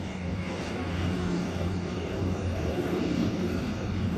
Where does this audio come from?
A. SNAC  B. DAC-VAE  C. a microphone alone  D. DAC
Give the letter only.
D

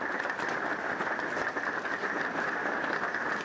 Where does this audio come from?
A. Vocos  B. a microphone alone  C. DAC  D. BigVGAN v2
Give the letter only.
B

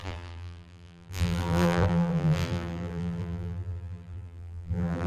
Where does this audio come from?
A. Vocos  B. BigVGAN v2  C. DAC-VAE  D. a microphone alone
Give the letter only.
B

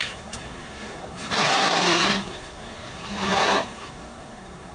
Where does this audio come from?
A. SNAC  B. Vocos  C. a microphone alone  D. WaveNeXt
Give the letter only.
A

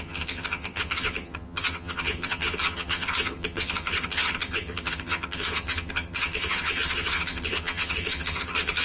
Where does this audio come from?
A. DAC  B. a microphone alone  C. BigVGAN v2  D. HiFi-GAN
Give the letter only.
D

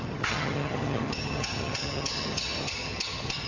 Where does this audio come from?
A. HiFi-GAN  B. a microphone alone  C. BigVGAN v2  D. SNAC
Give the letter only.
A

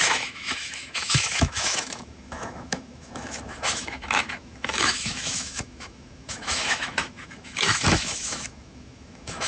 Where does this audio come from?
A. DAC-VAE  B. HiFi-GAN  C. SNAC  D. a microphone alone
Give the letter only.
A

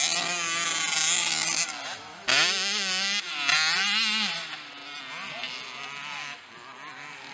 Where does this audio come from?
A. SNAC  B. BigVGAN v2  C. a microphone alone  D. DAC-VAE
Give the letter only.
C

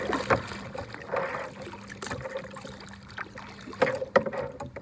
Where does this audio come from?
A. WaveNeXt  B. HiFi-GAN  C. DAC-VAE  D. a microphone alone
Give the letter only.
D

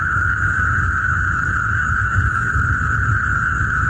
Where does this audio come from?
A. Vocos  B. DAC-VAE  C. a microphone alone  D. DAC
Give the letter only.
C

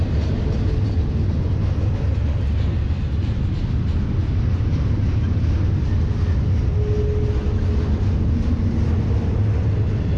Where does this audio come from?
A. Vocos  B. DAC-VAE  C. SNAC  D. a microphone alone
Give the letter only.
D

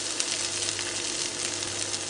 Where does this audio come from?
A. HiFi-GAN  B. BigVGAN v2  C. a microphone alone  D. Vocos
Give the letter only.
C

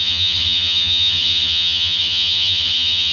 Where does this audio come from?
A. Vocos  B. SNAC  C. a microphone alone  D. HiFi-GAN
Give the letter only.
D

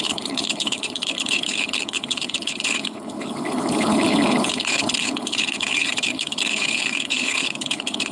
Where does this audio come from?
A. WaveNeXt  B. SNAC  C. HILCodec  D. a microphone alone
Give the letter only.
C